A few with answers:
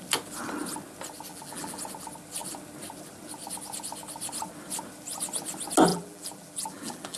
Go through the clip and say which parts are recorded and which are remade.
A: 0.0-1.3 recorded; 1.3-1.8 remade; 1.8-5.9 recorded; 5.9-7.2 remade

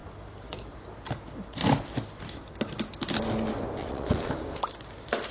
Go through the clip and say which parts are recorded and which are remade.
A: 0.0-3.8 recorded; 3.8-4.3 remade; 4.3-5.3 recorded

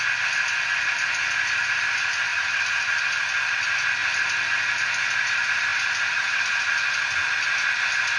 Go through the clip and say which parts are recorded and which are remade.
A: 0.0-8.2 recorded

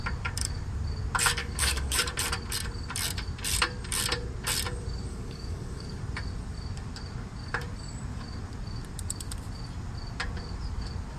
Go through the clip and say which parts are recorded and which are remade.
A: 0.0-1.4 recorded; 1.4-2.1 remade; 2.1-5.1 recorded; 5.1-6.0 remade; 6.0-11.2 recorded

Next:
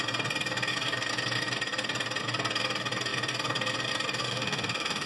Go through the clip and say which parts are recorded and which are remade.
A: 0.0-4.2 recorded; 4.2-5.1 remade

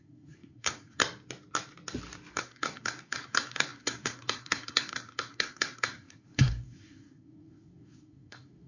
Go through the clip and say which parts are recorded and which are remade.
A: 0.0-1.0 remade; 1.0-2.3 recorded; 2.3-8.7 remade